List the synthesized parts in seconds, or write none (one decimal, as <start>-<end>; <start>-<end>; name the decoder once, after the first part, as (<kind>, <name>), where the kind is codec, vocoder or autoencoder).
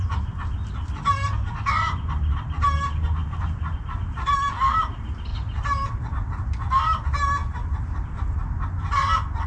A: 3.2-4.5 (vocoder, BigVGAN v2); 5.3-6.4; 7.4-8.4